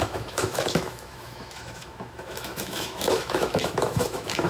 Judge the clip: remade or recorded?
remade